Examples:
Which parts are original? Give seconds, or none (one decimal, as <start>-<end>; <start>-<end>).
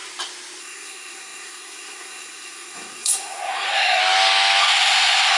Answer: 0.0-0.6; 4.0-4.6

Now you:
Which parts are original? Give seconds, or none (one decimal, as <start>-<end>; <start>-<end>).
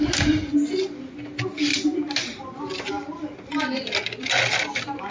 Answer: 0.0-5.1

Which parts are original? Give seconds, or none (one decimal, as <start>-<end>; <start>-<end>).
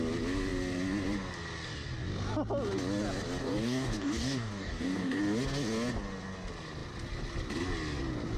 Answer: 0.0-3.4; 5.2-8.4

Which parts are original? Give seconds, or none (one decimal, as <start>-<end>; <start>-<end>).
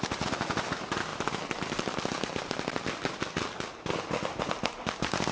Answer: 0.0-5.3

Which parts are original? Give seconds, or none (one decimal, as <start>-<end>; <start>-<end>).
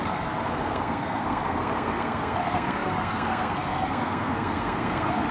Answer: none